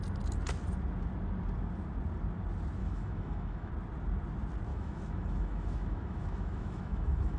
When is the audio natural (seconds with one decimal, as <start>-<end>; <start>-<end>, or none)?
0.0-2.8; 3.7-4.7